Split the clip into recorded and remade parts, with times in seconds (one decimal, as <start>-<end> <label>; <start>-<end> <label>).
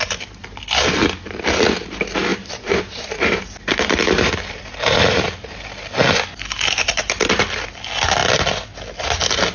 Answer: 0.0-2.3 recorded; 2.3-5.2 remade; 5.2-9.5 recorded